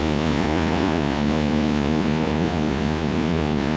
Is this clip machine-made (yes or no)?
yes